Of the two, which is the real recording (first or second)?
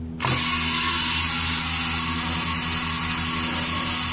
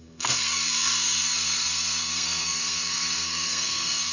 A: first